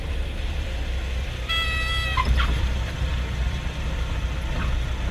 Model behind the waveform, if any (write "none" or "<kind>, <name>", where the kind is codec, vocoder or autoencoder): none